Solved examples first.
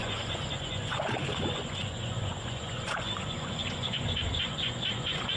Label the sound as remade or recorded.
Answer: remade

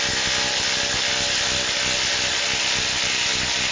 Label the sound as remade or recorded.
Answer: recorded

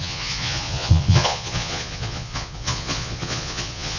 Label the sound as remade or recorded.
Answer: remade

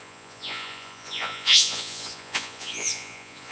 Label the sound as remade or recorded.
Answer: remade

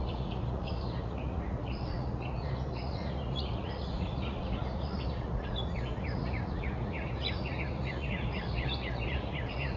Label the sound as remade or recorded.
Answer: remade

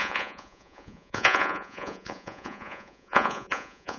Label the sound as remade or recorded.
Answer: remade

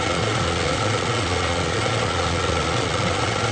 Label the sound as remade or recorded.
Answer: remade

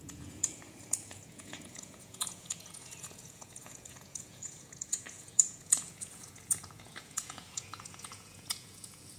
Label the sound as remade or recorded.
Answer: remade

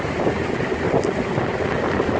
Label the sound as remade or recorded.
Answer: recorded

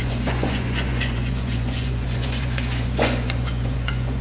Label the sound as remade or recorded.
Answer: remade